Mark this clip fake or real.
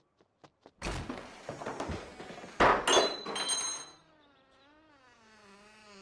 real